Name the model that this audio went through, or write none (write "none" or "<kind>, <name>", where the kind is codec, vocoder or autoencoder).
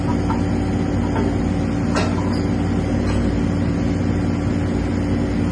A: none